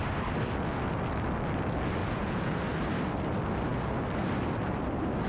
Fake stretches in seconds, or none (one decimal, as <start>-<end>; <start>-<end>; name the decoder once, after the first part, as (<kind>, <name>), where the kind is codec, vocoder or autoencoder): 2.0-2.6 (vocoder, Vocos)